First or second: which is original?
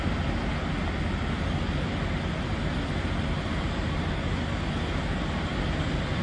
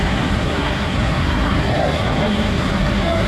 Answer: first